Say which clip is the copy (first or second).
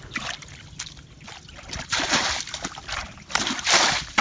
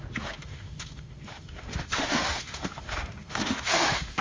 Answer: second